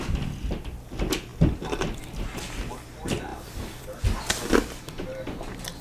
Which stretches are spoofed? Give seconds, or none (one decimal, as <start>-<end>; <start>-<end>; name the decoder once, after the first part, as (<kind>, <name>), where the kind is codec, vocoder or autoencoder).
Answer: 3.3-4.0 (vocoder, BigVGAN v2)